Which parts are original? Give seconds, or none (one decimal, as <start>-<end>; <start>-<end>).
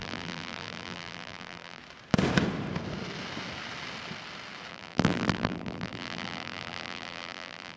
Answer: 1.8-4.7